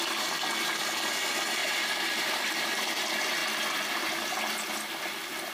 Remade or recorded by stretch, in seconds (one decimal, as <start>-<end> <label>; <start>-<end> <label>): 0.0-1.6 recorded; 1.6-2.6 remade; 2.6-5.5 recorded